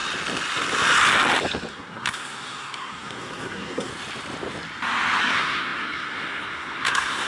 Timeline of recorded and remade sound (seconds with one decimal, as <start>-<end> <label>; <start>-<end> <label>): 0.0-1.7 recorded; 1.7-3.9 remade; 3.9-5.2 recorded; 5.2-7.3 remade